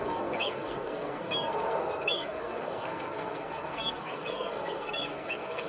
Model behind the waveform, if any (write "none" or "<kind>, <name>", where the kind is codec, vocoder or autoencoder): codec, SNAC